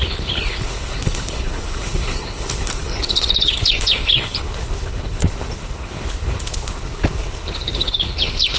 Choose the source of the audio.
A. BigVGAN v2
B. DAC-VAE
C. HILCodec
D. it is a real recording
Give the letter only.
C